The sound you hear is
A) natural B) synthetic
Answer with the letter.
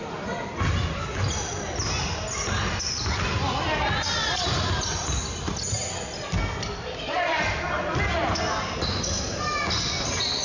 A